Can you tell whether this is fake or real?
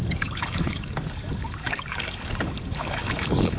fake